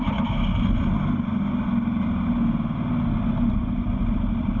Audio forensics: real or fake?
real